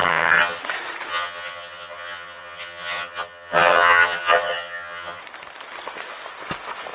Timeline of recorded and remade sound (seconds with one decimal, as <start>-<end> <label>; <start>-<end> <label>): 0.0-0.6 remade; 0.6-1.1 recorded; 1.1-5.2 remade; 5.2-6.9 recorded